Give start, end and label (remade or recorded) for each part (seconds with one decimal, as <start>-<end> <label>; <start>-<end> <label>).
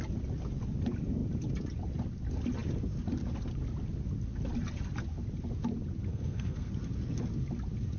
0.0-6.1 recorded; 6.1-6.7 remade; 6.7-8.0 recorded